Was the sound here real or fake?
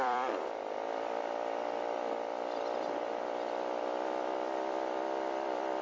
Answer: fake